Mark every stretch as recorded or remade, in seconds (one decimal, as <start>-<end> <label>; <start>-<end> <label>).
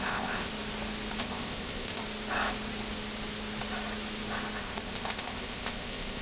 0.0-0.5 remade; 0.5-1.2 recorded; 1.2-2.0 remade; 2.0-4.6 recorded; 4.6-6.2 remade